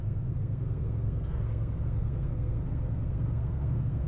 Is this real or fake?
fake